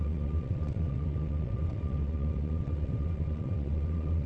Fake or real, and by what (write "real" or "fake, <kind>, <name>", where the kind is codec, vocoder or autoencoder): fake, vocoder, WaveNeXt